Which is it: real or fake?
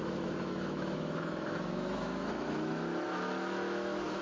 fake